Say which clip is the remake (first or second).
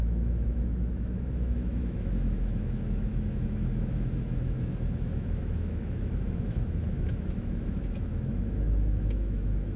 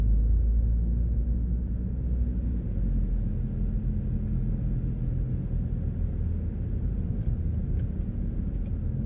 first